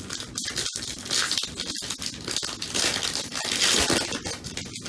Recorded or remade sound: recorded